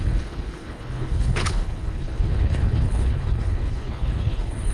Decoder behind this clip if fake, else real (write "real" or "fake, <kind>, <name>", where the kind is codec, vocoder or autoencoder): fake, codec, HILCodec